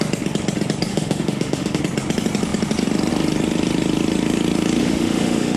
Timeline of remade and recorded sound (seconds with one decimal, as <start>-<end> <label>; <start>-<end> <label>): 0.0-0.9 recorded; 0.9-1.8 remade; 1.8-4.8 recorded; 4.8-5.6 remade